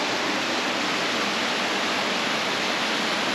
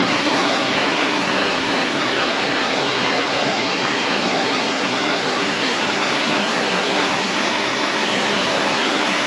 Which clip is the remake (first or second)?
second